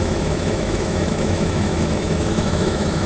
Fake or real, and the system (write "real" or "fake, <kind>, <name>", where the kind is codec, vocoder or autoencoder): fake, autoencoder, DAC-VAE